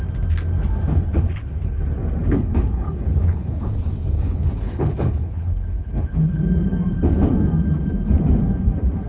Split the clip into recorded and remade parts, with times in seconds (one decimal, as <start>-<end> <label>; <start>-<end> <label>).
0.0-0.9 recorded; 0.9-1.8 remade; 1.8-2.2 recorded; 2.2-6.4 remade; 6.4-9.1 recorded